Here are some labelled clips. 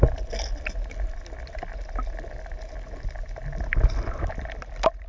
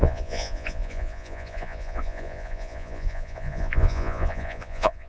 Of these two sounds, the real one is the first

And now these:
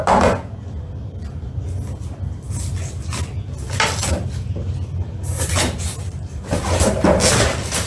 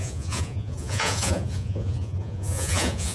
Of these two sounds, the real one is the first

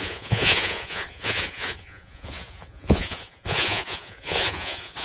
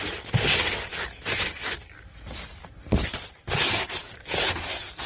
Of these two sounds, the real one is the second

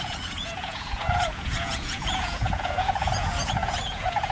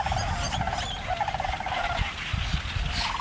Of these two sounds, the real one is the second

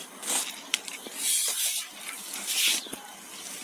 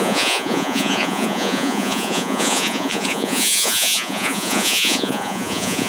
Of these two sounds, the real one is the first